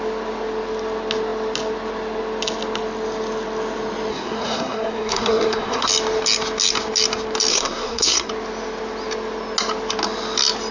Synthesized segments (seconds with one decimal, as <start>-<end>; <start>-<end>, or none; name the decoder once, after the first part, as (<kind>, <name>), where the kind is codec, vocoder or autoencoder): 4.1-5.9 (codec, SNAC); 7.5-8.3

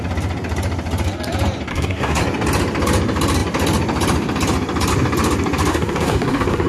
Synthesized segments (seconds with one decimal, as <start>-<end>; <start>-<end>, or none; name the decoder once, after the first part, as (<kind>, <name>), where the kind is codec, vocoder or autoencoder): 1.7-2.2 (codec, SNAC); 5.7-6.7

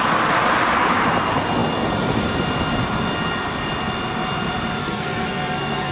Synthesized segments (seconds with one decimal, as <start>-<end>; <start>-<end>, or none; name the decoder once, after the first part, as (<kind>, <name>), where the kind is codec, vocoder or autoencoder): 4.8-5.9 (codec, SNAC)